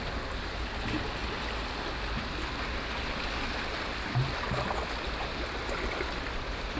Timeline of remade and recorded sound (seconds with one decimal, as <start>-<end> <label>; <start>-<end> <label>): 0.0-6.8 recorded